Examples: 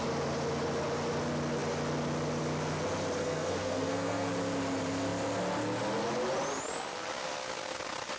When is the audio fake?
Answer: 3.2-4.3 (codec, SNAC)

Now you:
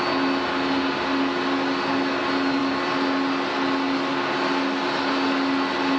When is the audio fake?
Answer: none

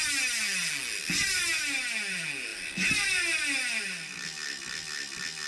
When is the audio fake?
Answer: none

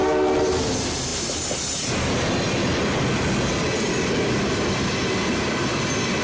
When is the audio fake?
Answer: none

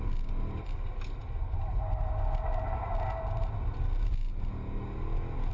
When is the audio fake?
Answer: none